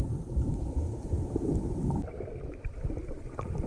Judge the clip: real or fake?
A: real